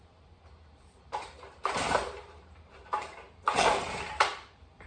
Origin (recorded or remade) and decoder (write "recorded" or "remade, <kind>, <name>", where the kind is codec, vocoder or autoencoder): remade, vocoder, BigVGAN v2